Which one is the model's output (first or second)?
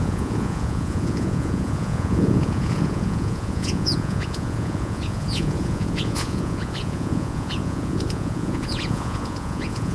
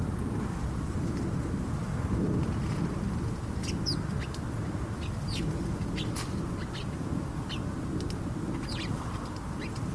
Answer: first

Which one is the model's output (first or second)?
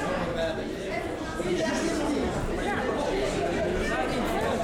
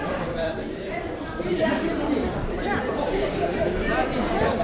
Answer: second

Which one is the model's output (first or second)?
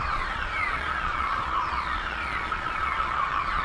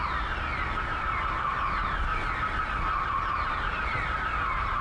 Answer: first